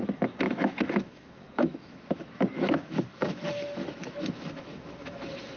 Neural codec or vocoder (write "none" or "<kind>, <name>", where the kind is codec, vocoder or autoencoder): autoencoder, DAC-VAE